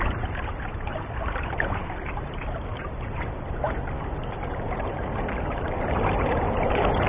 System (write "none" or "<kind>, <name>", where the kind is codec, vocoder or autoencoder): vocoder, BigVGAN v2